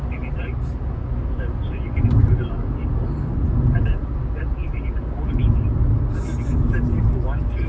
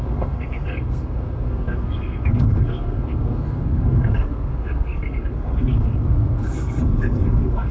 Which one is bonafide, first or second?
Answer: first